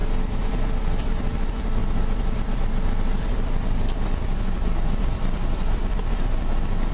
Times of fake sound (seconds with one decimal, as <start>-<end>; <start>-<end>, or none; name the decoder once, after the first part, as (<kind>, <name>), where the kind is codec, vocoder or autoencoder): 0.0-6.9 (vocoder, BigVGAN v2)

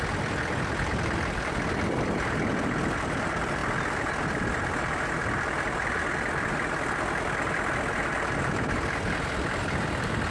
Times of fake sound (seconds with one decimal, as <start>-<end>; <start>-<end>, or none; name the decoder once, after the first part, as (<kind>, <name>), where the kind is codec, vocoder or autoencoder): 0.0-3.6 (vocoder, BigVGAN v2); 4.2-10.3